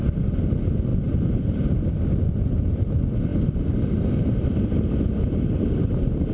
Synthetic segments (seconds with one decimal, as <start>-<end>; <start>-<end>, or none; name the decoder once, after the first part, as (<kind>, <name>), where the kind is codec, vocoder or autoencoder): none